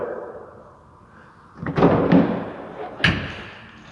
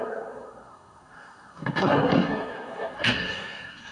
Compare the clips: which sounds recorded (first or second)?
first